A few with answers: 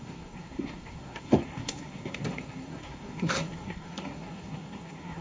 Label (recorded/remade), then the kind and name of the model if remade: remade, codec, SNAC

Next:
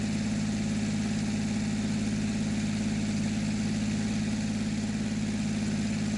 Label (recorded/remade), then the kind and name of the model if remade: recorded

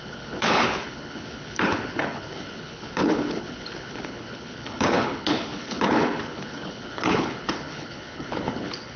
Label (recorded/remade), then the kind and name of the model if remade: remade, codec, HILCodec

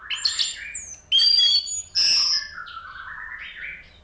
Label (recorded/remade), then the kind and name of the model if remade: recorded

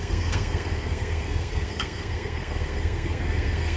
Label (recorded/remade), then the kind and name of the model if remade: remade, codec, SNAC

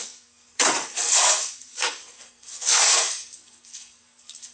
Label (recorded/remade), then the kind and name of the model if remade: remade, codec, SNAC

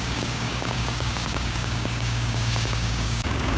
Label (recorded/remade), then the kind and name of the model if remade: remade, codec, DAC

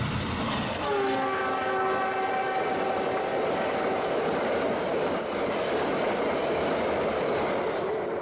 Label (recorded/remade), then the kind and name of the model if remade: recorded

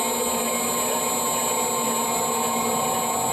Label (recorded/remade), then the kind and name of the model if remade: recorded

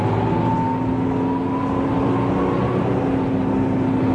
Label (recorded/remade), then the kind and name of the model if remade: recorded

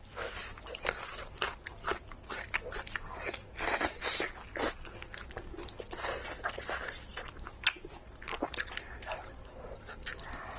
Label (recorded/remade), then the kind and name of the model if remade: recorded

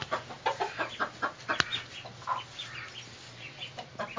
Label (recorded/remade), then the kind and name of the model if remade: recorded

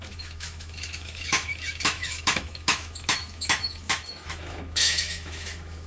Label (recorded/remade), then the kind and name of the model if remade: remade, autoencoder, DAC-VAE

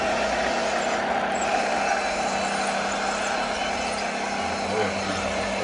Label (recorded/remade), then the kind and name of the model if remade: recorded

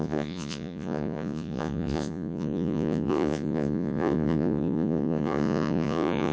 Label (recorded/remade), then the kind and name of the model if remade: remade, vocoder, Vocos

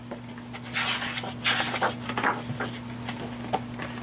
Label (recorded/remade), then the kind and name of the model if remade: recorded